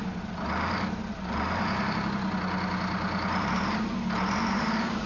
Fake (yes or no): no